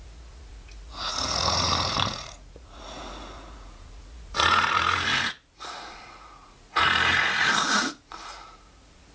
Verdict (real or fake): fake